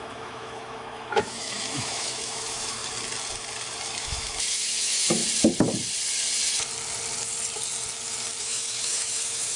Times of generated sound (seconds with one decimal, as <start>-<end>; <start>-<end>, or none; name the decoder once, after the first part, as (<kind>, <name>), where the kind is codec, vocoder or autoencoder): 0.0-2.8 (autoencoder, DAC-VAE); 4.0-5.2; 8.4-9.6